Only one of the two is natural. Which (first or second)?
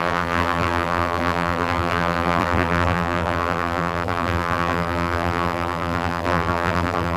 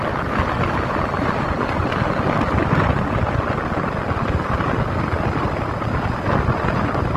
second